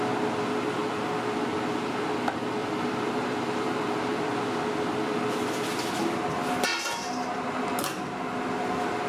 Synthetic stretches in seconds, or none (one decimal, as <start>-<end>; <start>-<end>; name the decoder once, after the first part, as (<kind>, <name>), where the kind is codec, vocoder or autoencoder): 2.6-4.6 (vocoder, BigVGAN v2)